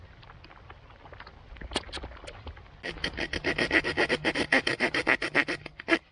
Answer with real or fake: real